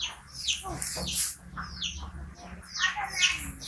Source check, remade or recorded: recorded